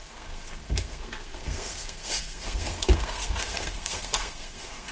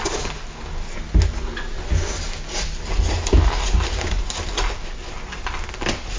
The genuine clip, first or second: second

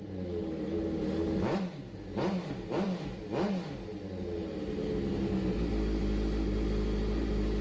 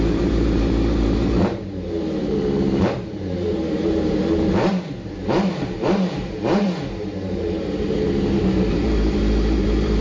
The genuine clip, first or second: first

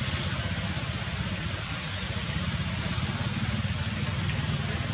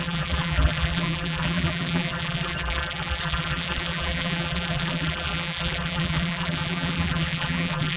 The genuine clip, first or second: first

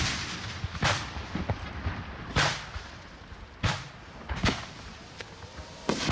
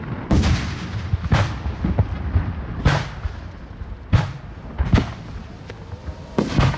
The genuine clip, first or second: second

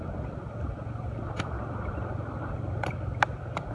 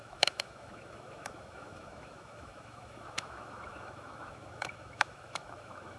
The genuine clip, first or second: first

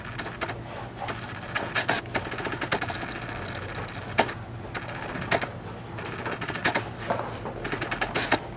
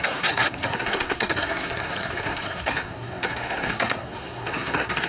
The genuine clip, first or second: first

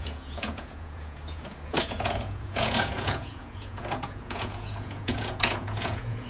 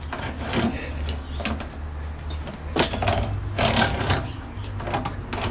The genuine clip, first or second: second